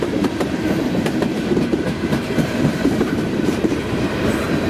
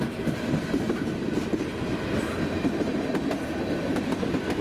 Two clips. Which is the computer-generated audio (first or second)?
first